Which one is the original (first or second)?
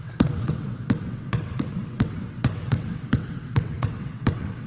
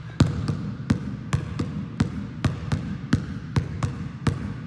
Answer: second